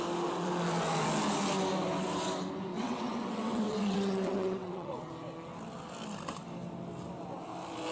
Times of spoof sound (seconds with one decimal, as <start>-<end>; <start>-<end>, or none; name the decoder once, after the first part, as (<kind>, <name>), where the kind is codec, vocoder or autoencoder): 2.7-5.1 (vocoder, WaveNeXt)